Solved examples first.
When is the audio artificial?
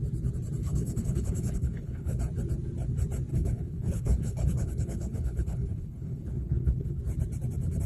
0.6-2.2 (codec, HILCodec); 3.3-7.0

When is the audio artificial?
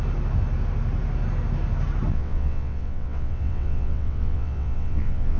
2.1-5.4 (vocoder, WaveNeXt)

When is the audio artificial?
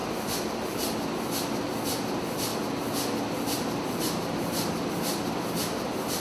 0.0-0.5 (vocoder, BigVGAN v2)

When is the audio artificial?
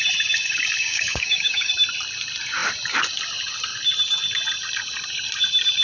0.8-1.7 (codec, DAC)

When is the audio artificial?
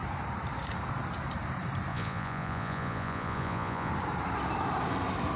1.9-3.9 (vocoder, Vocos)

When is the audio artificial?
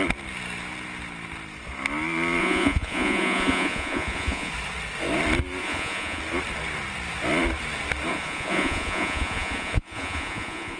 2.4-4.5 (vocoder, Vocos); 5.6-6.2; 8.1-10.8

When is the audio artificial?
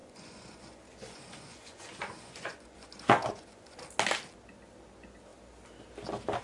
0.0-3.8 (vocoder, Vocos)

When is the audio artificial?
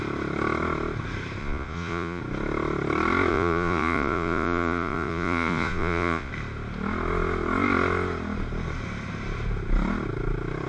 1.4-2.2 (vocoder, Vocos); 3.3-6.3